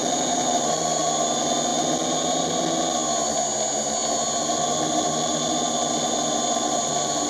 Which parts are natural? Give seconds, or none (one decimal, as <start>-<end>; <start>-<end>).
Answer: 0.0-7.3